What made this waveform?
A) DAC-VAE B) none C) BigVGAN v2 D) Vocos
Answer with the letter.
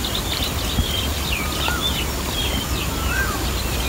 B